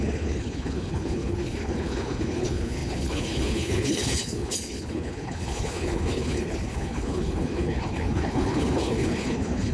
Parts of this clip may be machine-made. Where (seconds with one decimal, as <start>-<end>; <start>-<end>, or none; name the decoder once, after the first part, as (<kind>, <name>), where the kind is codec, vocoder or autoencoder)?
0.0-9.7 (codec, HILCodec)